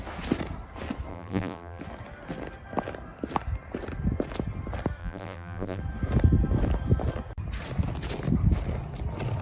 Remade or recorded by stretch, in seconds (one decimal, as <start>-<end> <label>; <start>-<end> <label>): 0.0-1.1 recorded; 1.1-1.8 remade; 1.8-5.0 recorded; 5.0-5.8 remade; 5.8-9.4 recorded